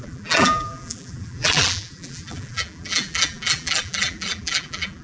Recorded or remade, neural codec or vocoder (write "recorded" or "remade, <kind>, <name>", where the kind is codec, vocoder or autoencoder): remade, vocoder, BigVGAN v2